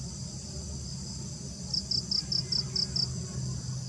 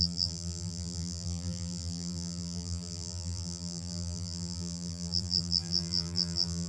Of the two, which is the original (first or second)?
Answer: first